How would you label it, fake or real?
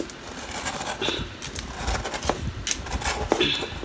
real